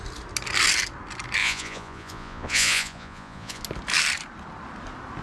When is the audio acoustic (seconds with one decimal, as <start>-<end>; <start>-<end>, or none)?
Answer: 0.0-1.4; 3.6-5.2